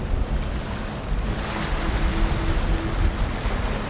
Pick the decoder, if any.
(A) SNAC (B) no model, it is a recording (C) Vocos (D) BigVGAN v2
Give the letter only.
B